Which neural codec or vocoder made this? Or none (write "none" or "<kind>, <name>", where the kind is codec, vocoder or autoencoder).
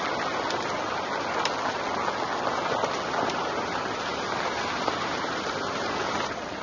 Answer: none